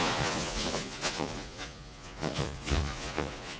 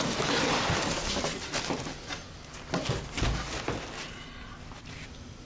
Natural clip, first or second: second